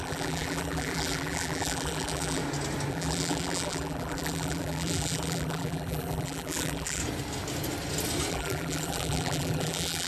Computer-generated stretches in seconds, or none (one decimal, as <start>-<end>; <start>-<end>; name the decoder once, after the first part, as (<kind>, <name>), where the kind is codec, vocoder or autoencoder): 0.0-2.4 (vocoder, BigVGAN v2); 2.9-7.0; 8.3-10.1